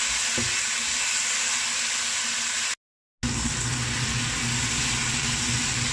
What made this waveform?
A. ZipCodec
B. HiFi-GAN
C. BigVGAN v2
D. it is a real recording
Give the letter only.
D